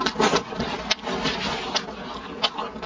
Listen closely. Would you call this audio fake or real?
real